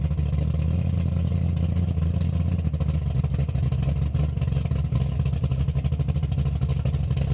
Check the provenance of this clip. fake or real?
real